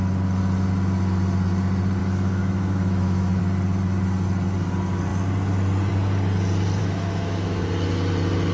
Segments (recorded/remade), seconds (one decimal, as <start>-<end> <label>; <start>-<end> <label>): 0.0-2.0 recorded; 2.0-3.4 remade; 3.4-6.8 recorded; 6.8-7.6 remade; 7.6-8.5 recorded

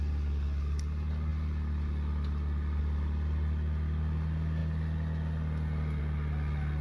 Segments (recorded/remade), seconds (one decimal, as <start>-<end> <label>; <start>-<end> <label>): 0.0-6.8 recorded